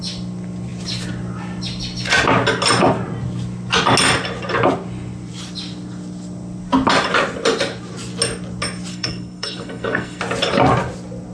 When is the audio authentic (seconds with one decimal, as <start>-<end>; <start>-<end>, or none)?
0.0-8.9; 10.2-11.3